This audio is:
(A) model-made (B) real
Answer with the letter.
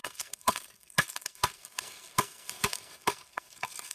A